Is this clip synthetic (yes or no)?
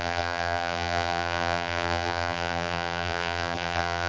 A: yes